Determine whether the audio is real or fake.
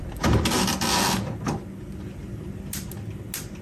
real